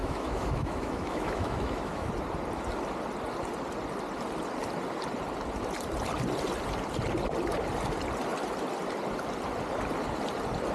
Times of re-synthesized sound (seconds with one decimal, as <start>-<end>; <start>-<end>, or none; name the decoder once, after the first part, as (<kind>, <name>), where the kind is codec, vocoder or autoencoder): 0.0-2.1 (autoencoder, DAC-VAE)